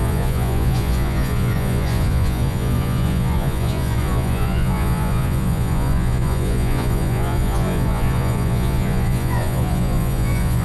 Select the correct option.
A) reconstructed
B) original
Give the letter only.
A